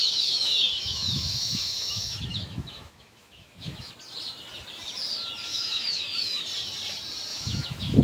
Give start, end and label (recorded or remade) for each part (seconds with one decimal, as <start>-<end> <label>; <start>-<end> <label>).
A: 0.0-3.9 remade; 3.9-5.5 recorded; 5.5-6.4 remade; 6.4-7.3 recorded; 7.3-8.0 remade